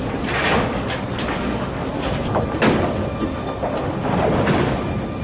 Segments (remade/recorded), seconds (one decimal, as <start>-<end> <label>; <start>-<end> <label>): 0.0-0.4 recorded; 0.4-1.9 remade; 1.9-5.2 recorded